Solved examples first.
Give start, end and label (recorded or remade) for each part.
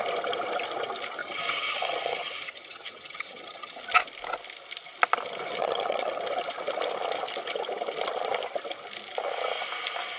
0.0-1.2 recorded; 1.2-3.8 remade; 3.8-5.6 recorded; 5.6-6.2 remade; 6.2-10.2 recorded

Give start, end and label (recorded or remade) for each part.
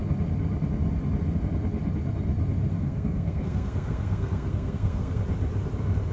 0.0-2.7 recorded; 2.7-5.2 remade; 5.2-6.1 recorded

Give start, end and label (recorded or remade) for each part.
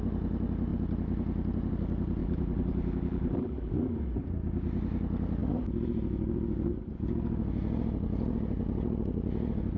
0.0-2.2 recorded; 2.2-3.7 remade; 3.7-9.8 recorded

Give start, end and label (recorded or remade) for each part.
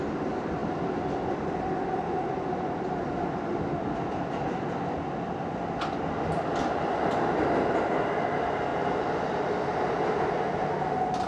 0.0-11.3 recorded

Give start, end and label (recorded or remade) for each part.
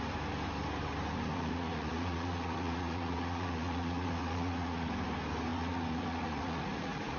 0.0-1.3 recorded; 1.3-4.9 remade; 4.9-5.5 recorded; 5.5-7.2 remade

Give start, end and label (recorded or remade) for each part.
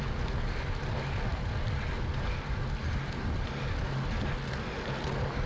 0.0-5.5 recorded